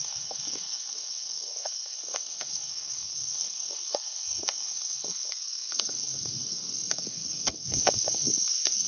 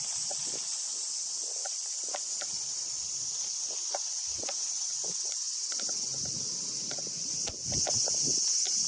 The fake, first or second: first